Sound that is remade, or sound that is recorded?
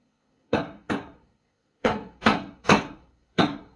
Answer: remade